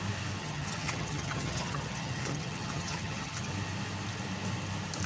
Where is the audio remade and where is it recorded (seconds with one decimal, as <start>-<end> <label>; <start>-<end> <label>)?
0.0-0.4 recorded; 0.4-3.5 remade; 3.5-5.1 recorded

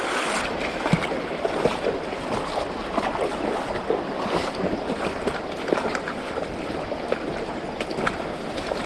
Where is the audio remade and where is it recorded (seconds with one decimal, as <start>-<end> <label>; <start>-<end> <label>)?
0.0-8.9 recorded

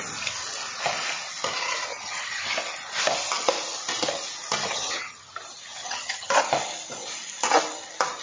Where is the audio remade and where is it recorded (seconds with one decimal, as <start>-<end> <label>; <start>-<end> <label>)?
0.0-1.9 recorded; 1.9-2.4 remade; 2.4-4.7 recorded; 4.7-5.3 remade; 5.3-5.8 recorded; 5.8-6.3 remade; 6.3-8.2 recorded

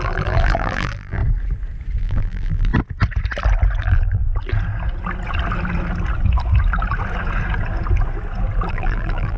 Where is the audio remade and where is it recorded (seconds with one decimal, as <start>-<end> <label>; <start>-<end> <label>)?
0.0-1.2 remade; 1.2-2.0 recorded; 2.0-2.7 remade; 2.7-3.8 recorded; 3.8-4.2 remade; 4.2-8.7 recorded; 8.7-9.4 remade

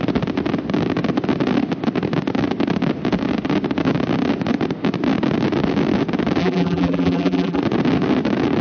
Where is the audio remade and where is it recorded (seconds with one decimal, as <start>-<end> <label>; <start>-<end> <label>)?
0.0-6.4 recorded; 6.4-7.6 remade; 7.6-8.6 recorded

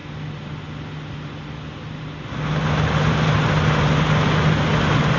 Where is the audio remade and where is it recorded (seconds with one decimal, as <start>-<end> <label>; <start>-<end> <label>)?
0.0-5.2 recorded